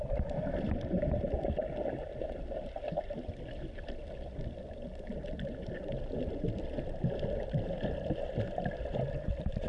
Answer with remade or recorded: recorded